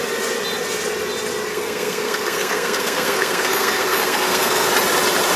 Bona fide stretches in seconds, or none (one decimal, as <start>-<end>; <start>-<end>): 0.0-1.5; 4.7-5.4